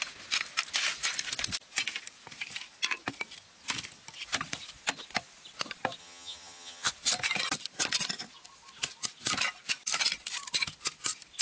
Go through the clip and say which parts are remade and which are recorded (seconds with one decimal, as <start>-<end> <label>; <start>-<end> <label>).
0.0-6.0 recorded; 6.0-6.9 remade; 6.9-11.4 recorded